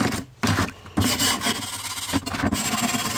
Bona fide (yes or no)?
yes